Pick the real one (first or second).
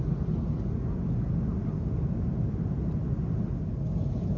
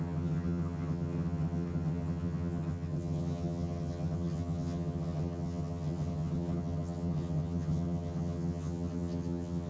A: first